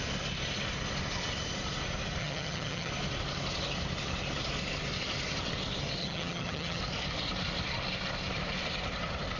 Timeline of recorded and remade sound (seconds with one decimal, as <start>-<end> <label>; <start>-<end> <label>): 0.0-2.2 recorded; 2.2-2.9 remade; 2.9-6.0 recorded; 6.0-6.8 remade; 6.8-9.4 recorded